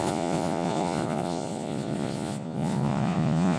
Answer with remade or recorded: remade